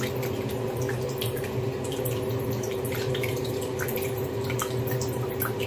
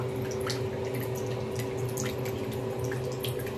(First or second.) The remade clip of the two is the first